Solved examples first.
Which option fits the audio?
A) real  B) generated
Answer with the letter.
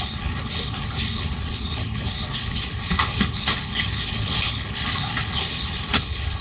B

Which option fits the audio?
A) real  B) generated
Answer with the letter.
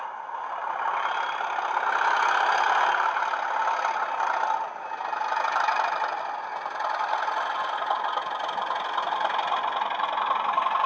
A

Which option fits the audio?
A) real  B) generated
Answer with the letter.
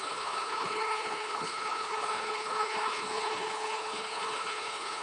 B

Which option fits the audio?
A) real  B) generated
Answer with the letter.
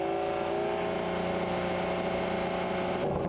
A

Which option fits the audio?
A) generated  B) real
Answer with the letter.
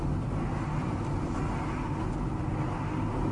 B